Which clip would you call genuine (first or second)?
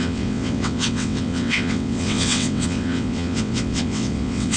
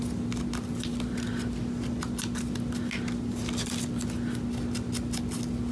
second